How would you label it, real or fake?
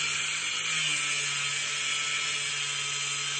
real